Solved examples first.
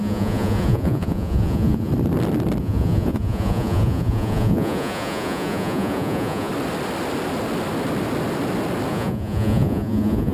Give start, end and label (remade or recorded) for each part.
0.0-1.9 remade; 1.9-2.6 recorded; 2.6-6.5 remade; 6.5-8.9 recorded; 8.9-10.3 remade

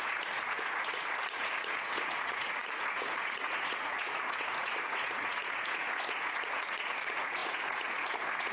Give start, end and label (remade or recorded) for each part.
0.0-8.5 remade

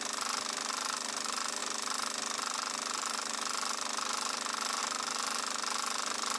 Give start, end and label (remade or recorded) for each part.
0.0-6.4 recorded